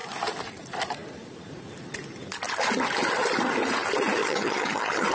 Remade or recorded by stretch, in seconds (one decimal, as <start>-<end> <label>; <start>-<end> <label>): 0.0-4.2 recorded; 4.2-5.1 remade